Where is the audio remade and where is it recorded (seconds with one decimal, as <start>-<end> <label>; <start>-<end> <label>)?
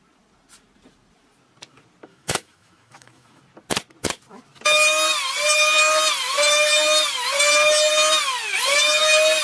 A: 0.0-2.1 recorded; 2.1-3.4 remade; 3.4-9.4 recorded